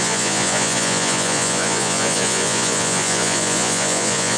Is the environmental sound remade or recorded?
remade